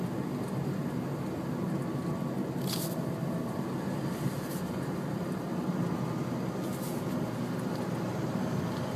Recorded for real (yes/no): yes